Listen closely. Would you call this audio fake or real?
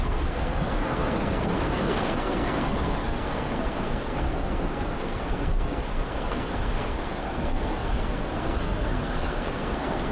fake